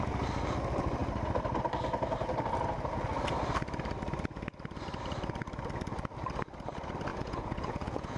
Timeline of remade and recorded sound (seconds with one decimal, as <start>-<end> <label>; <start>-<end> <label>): 0.0-7.1 recorded; 7.1-8.2 remade